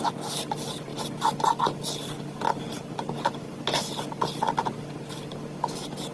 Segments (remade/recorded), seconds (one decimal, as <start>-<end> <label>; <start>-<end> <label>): 0.0-6.1 recorded